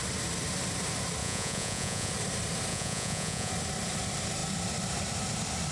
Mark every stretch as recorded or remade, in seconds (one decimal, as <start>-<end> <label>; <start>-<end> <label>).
0.0-1.2 recorded; 1.2-2.1 remade; 2.1-2.7 recorded; 2.7-3.5 remade; 3.5-5.7 recorded